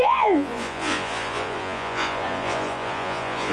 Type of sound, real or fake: fake